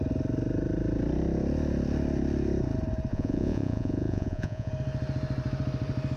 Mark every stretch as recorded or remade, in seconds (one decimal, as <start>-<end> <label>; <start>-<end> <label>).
0.0-3.1 recorded; 3.1-4.7 remade; 4.7-6.2 recorded